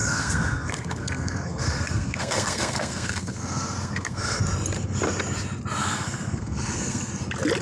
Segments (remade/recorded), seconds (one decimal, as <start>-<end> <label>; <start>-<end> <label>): 0.0-4.4 remade; 4.4-5.8 recorded; 5.8-7.1 remade; 7.1-7.6 recorded